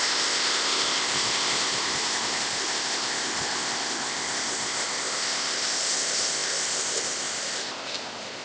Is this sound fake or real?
fake